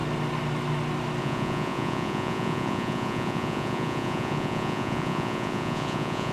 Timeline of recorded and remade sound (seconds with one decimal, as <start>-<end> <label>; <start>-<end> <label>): 0.0-1.2 recorded; 1.2-6.3 remade